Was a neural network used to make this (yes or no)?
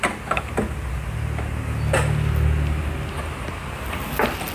no